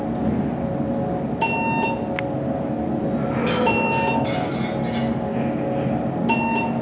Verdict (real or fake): real